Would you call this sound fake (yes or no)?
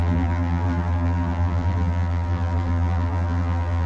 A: yes